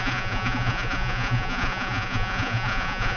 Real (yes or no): no